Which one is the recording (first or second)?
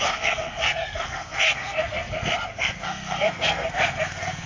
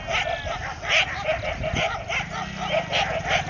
second